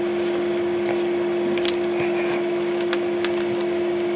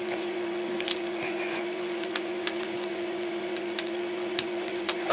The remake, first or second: second